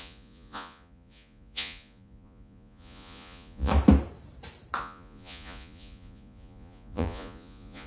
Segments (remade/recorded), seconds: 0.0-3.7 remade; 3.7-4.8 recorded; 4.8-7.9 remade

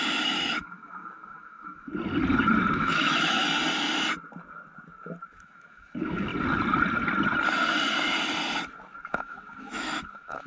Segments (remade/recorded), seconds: 0.0-1.9 remade; 1.9-2.7 recorded; 2.7-3.4 remade; 3.4-5.3 recorded; 5.3-6.3 remade; 6.3-9.1 recorded; 9.1-10.5 remade